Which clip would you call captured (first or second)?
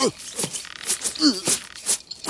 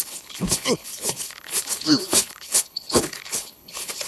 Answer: first